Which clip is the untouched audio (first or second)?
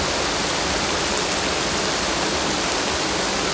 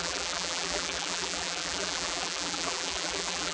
first